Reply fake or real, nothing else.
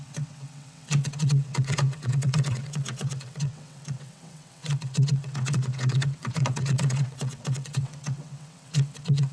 fake